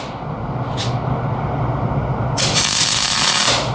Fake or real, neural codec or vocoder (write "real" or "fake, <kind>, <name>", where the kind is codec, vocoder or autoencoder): real